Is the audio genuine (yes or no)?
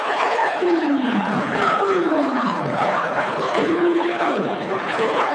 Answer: no